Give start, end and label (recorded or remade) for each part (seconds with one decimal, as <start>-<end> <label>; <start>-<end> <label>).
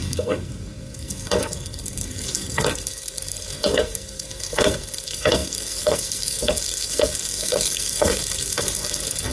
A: 0.0-9.3 remade